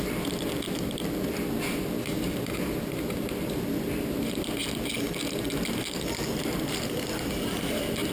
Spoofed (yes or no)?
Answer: no